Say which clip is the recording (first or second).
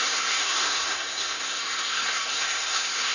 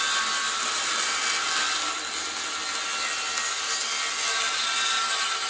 second